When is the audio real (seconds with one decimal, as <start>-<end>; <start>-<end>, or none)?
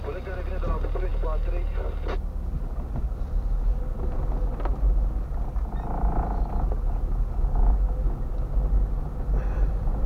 0.0-10.1